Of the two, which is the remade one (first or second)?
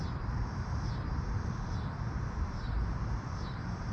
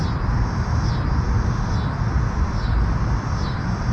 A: first